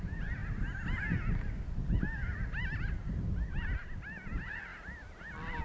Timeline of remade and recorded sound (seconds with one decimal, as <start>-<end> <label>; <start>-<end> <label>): 0.0-5.6 recorded